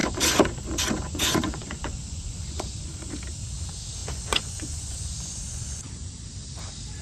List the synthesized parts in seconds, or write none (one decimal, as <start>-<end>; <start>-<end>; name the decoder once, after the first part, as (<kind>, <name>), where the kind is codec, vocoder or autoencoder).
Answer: 0.0-3.2 (vocoder, Vocos); 4.0-6.1